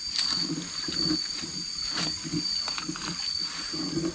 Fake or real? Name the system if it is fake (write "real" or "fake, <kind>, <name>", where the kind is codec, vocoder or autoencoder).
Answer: real